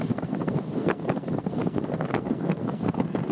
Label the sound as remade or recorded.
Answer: remade